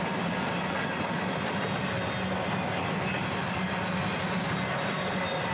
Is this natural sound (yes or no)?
yes